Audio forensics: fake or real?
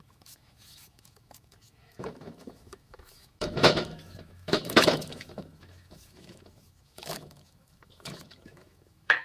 fake